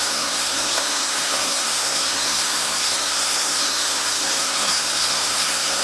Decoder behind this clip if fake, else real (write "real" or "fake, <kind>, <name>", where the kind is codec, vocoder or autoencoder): fake, codec, SNAC